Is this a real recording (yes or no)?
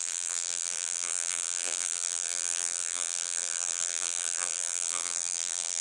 no